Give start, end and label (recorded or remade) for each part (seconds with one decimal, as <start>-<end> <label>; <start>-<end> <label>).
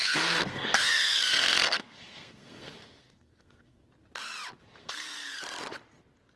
0.0-3.8 remade; 3.8-4.8 recorded; 4.8-5.4 remade; 5.4-6.4 recorded